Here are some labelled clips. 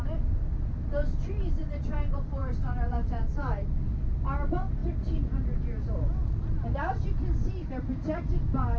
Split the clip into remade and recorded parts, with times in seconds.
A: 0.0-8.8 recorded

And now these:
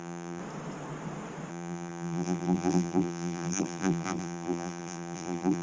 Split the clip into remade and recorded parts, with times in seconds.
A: 0.0-0.4 remade; 0.4-1.5 recorded; 1.5-5.6 remade

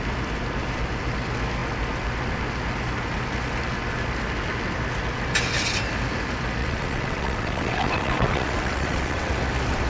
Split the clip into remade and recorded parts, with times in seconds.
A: 0.0-6.6 recorded; 6.6-9.3 remade; 9.3-9.9 recorded

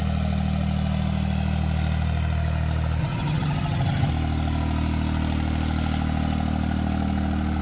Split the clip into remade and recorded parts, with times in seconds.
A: 0.0-3.0 recorded; 3.0-4.1 remade; 4.1-7.6 recorded

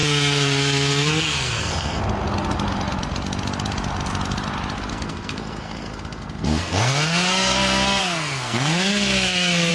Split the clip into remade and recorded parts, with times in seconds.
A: 0.0-2.0 remade; 2.0-4.9 recorded; 4.9-9.7 remade